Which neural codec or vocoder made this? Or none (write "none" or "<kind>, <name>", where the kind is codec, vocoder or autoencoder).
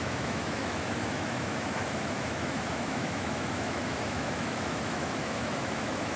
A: autoencoder, DAC-VAE